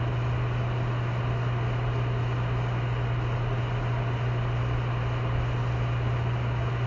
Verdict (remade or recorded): recorded